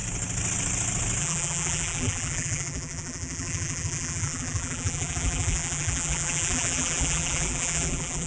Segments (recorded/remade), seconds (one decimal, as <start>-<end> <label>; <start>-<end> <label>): 0.0-1.2 recorded; 1.2-8.3 remade